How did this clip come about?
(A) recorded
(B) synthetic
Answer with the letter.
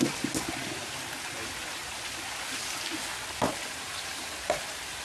A